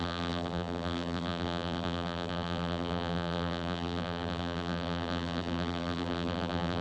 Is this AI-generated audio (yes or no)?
yes